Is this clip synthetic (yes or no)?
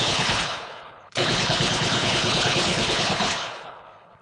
yes